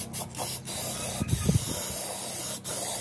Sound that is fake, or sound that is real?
real